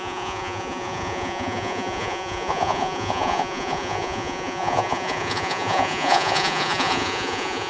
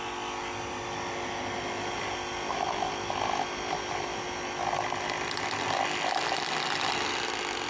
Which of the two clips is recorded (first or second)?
second